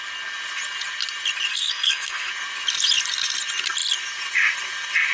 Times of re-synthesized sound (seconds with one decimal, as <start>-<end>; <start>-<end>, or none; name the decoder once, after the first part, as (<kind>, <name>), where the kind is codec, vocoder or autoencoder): 1.5-2.3 (codec, SNAC)

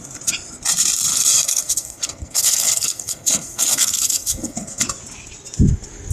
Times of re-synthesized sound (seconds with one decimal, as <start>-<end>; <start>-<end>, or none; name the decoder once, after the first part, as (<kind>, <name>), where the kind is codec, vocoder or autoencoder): 1.1-4.8 (codec, SNAC)

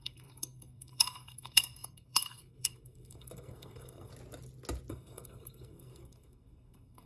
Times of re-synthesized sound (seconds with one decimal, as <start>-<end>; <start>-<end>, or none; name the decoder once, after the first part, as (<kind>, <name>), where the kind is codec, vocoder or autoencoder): 0.0-4.1 (codec, SNAC); 4.9-7.1

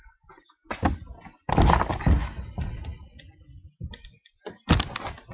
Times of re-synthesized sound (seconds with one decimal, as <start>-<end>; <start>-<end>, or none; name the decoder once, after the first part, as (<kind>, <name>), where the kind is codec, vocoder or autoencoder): none

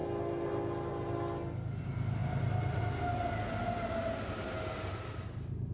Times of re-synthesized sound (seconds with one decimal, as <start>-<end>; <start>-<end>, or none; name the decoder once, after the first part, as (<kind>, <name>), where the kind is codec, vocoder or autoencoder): none